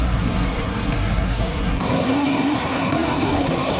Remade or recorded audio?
remade